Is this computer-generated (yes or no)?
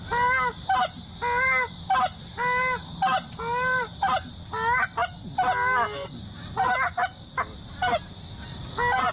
no